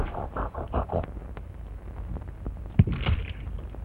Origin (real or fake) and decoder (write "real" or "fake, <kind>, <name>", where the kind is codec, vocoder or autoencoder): real